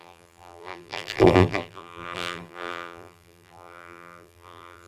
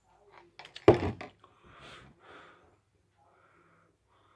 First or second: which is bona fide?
second